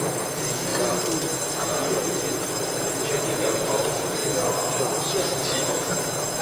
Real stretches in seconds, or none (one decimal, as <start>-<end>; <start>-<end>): 0.7-1.5; 4.2-5.7